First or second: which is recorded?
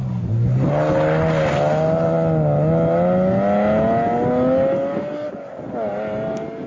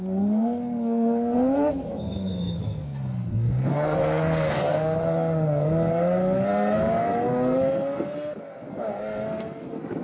first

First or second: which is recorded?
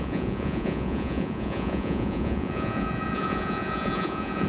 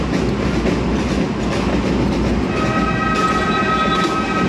second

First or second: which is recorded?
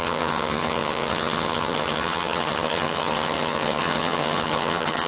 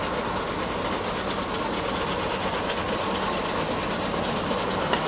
second